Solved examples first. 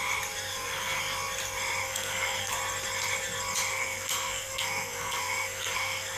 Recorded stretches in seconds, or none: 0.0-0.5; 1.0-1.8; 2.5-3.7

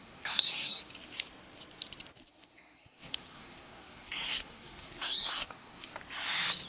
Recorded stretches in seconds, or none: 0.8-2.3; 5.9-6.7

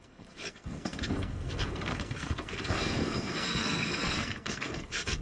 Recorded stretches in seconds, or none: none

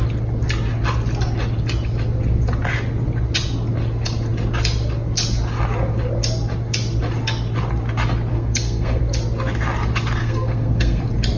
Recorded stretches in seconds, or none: 0.0-8.3; 9.0-10.2; 11.0-11.4